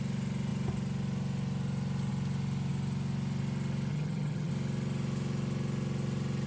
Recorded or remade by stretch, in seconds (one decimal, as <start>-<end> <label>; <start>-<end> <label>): 0.0-3.9 recorded; 3.9-4.5 remade; 4.5-6.5 recorded